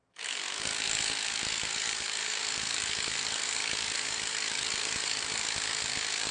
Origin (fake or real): fake